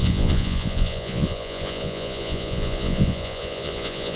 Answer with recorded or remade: remade